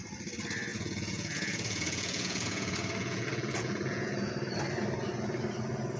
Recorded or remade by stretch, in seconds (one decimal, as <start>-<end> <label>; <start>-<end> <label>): 0.0-0.7 recorded; 0.7-4.3 remade; 4.3-6.0 recorded